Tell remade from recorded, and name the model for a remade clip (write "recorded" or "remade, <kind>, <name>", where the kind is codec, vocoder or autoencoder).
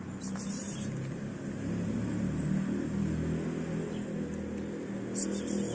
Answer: recorded